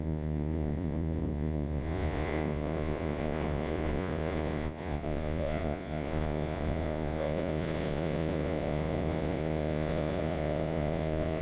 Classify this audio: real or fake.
fake